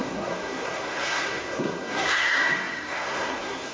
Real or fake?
fake